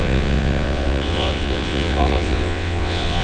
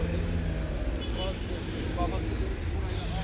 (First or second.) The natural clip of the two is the second